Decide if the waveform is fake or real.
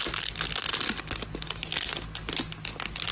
real